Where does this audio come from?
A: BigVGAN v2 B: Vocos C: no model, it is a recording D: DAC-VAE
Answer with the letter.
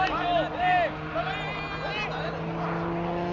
C